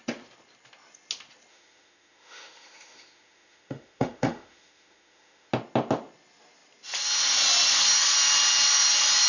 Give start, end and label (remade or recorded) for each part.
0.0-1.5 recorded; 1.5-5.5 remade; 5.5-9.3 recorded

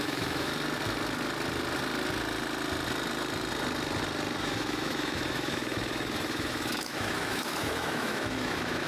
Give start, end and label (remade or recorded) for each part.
0.0-0.5 remade; 0.5-4.4 recorded; 4.4-8.9 remade

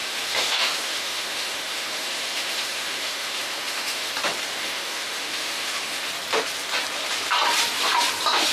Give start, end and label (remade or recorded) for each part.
0.0-4.1 remade; 4.1-4.5 recorded; 4.5-6.1 remade; 6.1-8.5 recorded

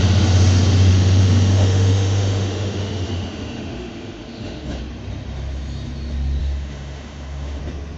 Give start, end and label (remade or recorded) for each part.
0.0-0.9 recorded; 0.9-4.8 remade; 4.8-6.4 recorded; 6.4-7.6 remade; 7.6-8.0 recorded

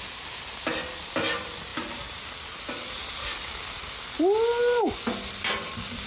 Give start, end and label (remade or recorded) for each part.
0.0-6.1 recorded